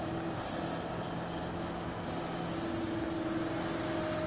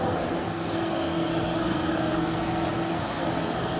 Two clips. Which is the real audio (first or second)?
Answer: first